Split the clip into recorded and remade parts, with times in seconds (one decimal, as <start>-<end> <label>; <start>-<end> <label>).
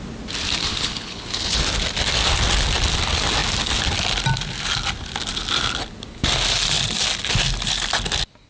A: 0.0-0.7 recorded; 0.7-1.6 remade; 1.6-8.5 recorded